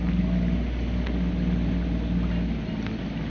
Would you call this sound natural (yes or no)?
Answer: yes